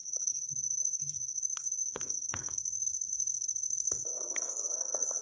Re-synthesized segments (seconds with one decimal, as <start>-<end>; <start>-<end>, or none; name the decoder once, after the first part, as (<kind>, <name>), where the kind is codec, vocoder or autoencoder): 0.0-5.2 (codec, SNAC)